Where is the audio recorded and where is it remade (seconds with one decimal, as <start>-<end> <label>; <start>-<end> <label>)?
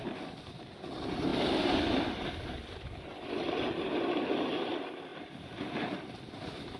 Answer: 0.0-6.8 recorded